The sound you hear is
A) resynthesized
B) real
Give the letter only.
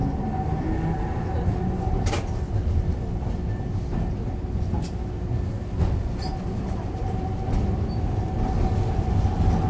B